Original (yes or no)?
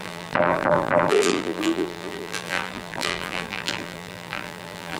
no